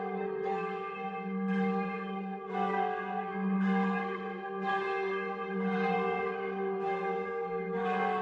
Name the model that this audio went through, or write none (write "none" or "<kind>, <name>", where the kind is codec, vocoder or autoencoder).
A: codec, SNAC